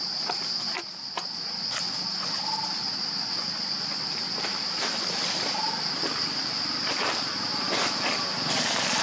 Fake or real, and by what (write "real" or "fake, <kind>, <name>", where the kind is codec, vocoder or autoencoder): real